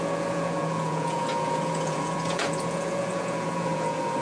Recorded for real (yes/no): no